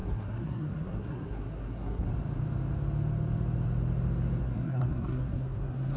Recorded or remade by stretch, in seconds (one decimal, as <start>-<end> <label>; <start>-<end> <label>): 0.0-2.1 remade; 2.1-4.4 recorded; 4.4-6.0 remade